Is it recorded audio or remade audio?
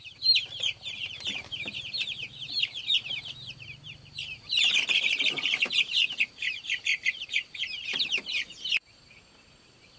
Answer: remade